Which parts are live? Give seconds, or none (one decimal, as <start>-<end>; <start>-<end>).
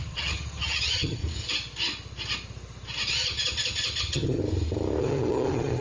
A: 1.2-4.0; 4.4-5.0